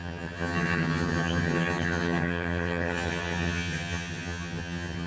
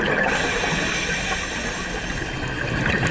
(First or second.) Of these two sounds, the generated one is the first